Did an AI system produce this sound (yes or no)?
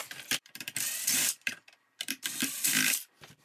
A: yes